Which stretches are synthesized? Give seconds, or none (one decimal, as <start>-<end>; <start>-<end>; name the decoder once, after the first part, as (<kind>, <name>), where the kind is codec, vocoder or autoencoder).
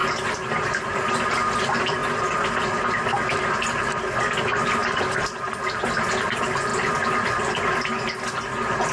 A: none